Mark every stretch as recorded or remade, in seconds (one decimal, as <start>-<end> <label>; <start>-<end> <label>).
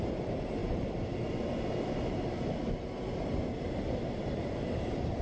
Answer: 0.0-2.6 remade; 2.6-4.0 recorded; 4.0-5.2 remade